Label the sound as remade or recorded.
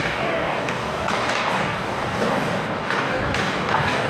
remade